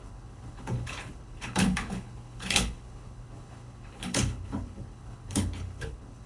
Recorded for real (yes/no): no